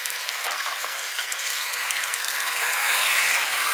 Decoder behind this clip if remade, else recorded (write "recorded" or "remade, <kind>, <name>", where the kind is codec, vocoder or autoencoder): remade, codec, SNAC